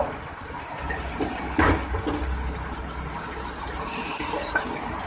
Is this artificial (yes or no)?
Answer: no